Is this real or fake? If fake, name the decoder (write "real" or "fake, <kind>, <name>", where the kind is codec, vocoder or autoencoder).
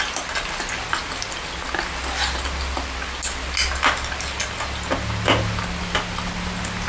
real